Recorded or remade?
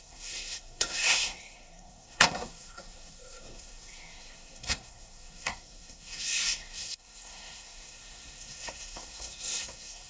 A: remade